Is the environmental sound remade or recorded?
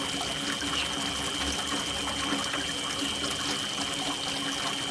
recorded